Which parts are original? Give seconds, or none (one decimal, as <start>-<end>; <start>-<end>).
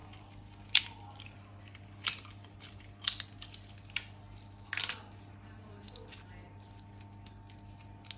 0.0-8.2